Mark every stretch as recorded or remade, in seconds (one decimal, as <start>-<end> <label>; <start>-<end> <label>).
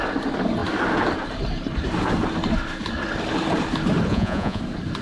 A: 0.0-4.1 recorded; 4.1-4.6 remade; 4.6-5.0 recorded